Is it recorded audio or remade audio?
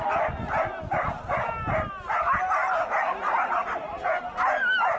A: recorded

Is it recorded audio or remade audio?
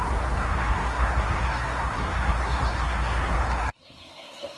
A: remade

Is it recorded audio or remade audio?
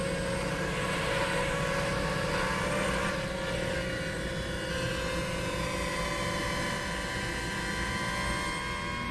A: recorded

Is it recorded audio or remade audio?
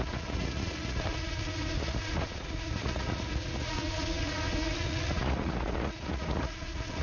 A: remade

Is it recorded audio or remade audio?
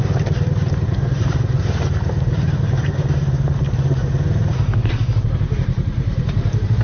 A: remade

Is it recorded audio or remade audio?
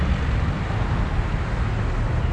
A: recorded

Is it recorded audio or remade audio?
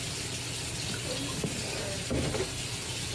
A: recorded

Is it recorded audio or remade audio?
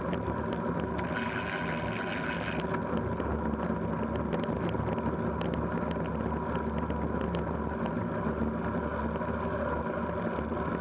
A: recorded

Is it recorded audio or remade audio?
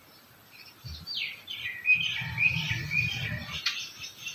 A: recorded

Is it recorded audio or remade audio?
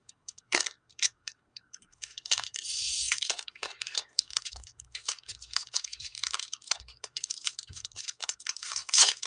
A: remade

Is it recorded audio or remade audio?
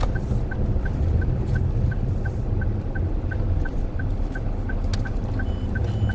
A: recorded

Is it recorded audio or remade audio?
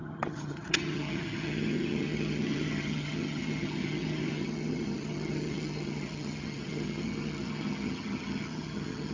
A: remade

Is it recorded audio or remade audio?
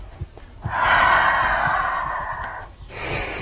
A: recorded